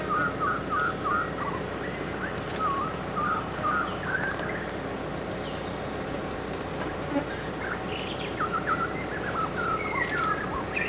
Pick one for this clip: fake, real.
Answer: real